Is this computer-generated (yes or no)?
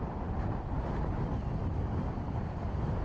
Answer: no